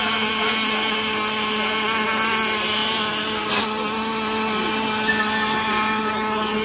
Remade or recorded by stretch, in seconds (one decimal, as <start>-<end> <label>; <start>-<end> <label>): 0.0-6.6 recorded